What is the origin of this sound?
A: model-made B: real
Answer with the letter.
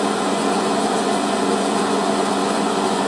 A